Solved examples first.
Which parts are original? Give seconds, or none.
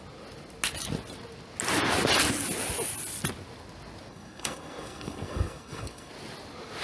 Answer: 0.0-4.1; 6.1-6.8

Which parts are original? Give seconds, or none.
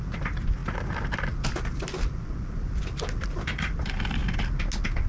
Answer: 0.0-0.6; 1.8-5.1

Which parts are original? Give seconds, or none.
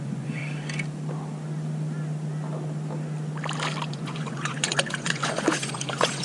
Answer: 0.4-3.9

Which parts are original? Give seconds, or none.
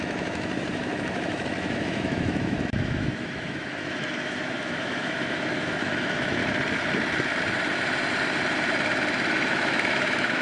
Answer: 6.4-9.5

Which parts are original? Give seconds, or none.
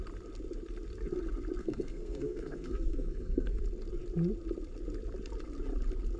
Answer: 0.0-1.6; 3.6-6.2